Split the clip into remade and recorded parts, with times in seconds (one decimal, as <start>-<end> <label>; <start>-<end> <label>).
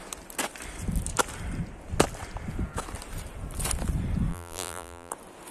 0.0-4.3 recorded; 4.3-5.1 remade; 5.1-5.5 recorded